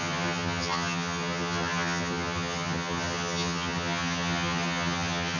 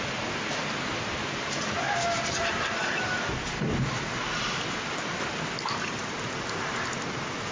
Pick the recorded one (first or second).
second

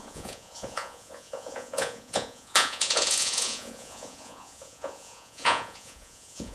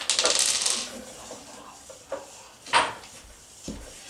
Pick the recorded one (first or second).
second